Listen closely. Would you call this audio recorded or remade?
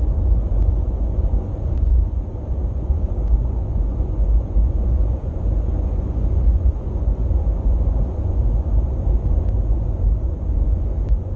remade